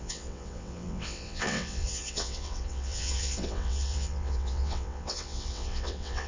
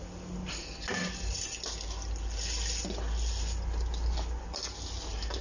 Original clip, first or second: second